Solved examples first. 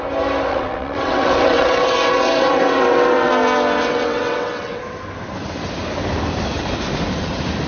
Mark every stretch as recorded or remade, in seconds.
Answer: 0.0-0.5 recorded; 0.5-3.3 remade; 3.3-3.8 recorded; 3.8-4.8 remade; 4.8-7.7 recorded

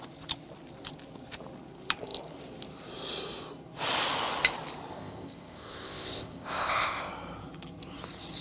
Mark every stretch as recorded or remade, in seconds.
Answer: 0.0-4.9 recorded; 4.9-7.1 remade; 7.1-8.4 recorded